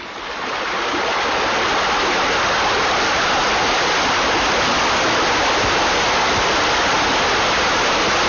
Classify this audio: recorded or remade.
recorded